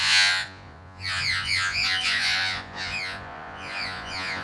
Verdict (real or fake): fake